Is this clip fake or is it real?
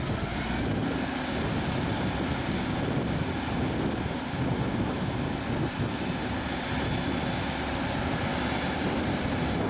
real